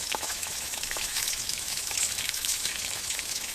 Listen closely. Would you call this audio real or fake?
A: fake